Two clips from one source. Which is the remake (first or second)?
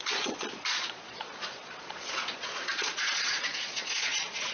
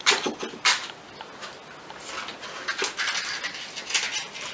first